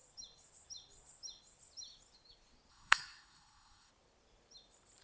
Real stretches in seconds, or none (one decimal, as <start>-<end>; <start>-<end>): 0.0-2.7; 3.9-5.0